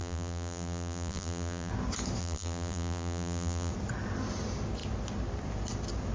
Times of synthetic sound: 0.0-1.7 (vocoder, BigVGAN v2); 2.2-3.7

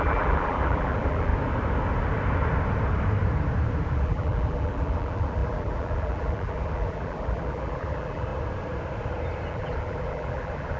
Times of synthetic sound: 0.0-1.3 (vocoder, BigVGAN v2); 3.9-8.3; 9.5-10.8